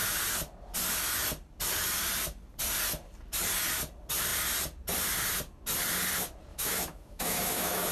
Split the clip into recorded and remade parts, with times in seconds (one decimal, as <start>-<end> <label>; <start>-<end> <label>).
0.0-6.5 recorded; 6.5-7.9 remade